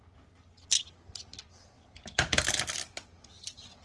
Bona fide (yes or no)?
yes